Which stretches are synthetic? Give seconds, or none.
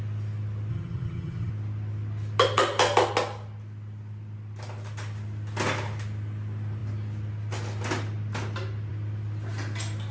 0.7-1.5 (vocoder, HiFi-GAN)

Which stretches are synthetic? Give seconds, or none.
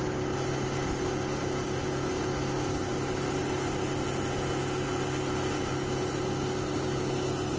none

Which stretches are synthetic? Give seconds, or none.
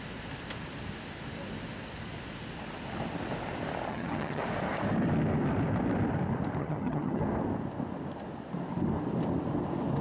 3.9-4.4 (vocoder, HiFi-GAN); 6.6-7.2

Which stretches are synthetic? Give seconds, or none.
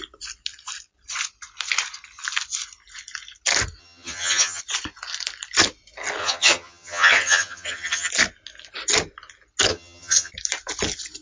3.8-4.6 (vocoder, HiFi-GAN); 6.2-8.1; 9.7-10.3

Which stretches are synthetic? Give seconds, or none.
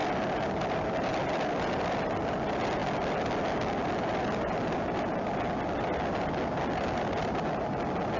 none